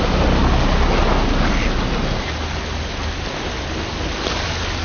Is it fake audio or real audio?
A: real